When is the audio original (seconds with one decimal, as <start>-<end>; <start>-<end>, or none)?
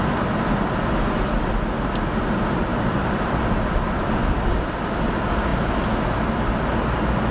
0.0-2.7; 3.4-7.3